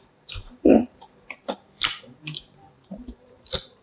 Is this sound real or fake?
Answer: fake